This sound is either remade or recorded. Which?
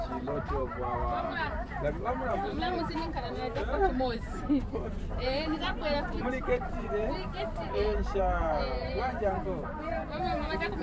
remade